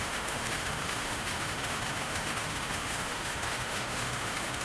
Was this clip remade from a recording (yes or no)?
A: yes